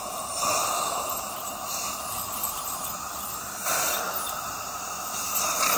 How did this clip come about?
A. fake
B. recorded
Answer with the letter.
B